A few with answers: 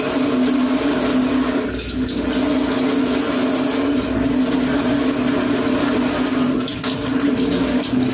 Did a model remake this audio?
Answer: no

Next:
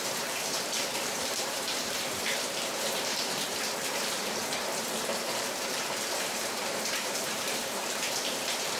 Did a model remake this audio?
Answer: yes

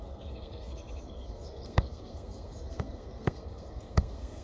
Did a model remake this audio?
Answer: yes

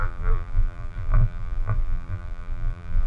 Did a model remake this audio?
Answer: yes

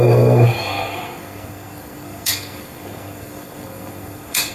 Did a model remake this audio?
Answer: yes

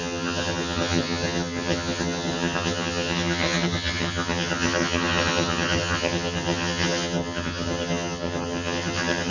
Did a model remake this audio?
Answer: yes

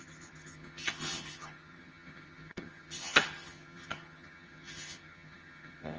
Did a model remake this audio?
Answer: yes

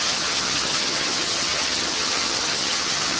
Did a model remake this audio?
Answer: yes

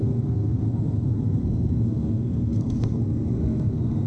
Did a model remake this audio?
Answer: yes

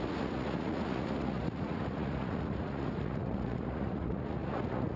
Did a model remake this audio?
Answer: yes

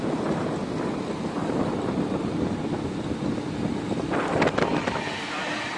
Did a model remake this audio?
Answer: no